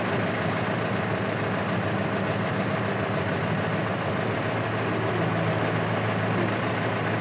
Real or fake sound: real